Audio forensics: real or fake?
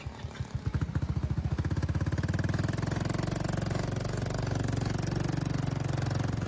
real